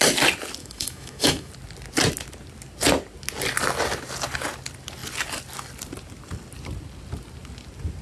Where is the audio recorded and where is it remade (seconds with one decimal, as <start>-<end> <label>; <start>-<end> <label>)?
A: 0.0-0.6 recorded; 0.6-1.5 remade; 1.5-8.0 recorded